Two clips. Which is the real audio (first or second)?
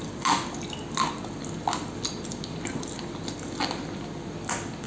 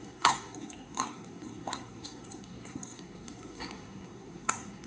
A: first